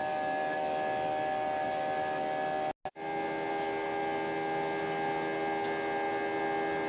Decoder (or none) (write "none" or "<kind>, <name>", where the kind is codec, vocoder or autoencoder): none